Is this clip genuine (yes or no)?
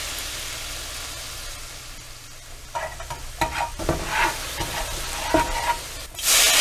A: yes